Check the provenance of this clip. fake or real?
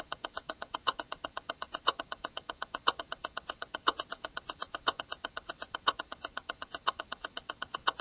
fake